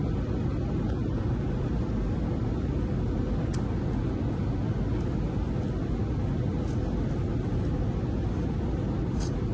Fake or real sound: real